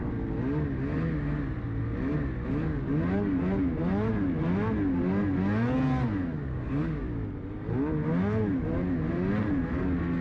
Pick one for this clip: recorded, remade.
recorded